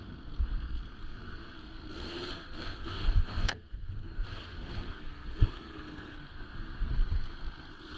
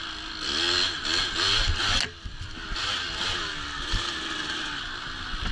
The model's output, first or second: first